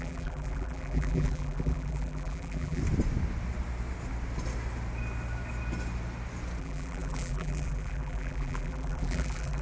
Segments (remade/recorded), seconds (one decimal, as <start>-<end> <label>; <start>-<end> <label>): 0.0-2.8 remade; 2.8-6.6 recorded; 6.6-9.6 remade